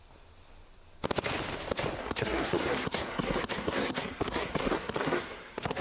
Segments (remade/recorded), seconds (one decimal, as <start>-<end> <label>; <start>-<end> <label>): 0.0-2.0 recorded; 2.0-5.8 remade